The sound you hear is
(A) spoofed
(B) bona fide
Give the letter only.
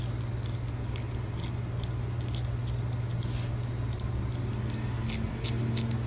B